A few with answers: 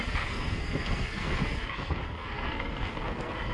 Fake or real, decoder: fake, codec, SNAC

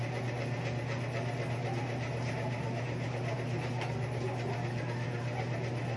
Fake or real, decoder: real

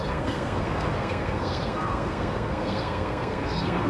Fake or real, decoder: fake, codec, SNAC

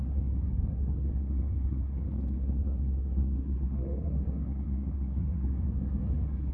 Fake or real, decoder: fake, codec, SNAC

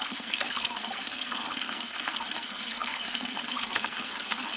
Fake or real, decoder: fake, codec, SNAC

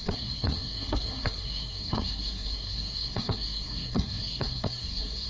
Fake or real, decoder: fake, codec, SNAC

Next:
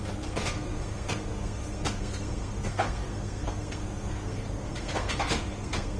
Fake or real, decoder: fake, codec, SNAC